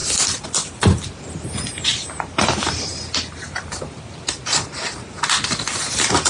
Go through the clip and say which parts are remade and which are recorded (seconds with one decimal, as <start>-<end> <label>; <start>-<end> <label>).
0.0-6.3 recorded